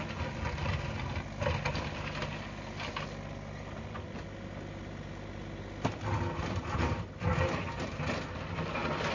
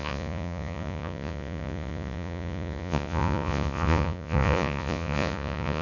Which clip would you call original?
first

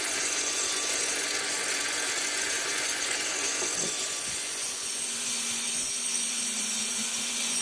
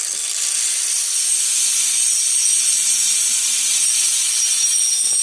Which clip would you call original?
second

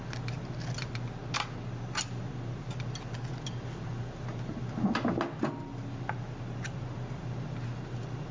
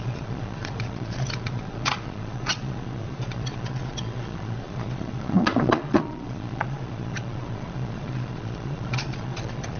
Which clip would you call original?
first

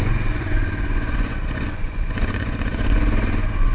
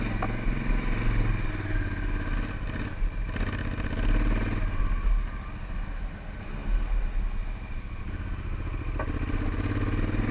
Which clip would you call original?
second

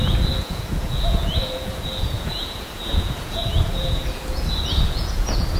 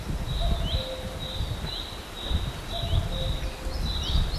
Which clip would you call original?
second